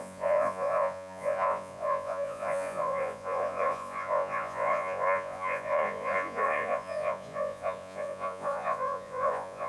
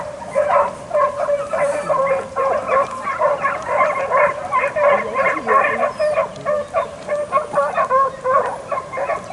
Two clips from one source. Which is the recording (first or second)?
second